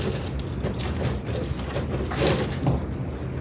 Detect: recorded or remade recorded